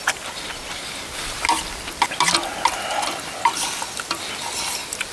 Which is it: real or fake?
real